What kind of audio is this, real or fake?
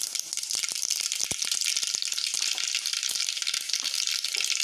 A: real